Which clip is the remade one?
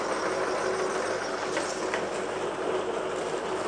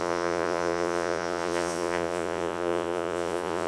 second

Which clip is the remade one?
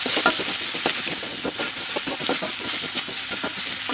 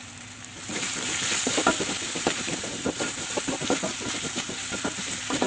second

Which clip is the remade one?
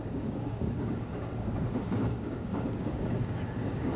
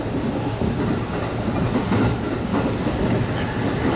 first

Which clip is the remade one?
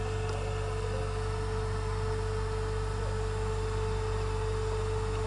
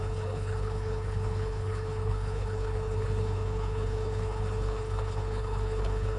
second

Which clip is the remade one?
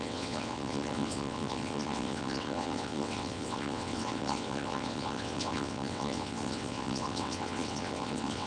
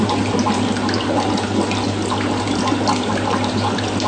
first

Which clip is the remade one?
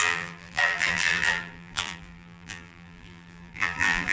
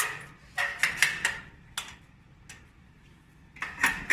first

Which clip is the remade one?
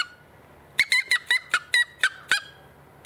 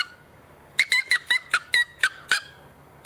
second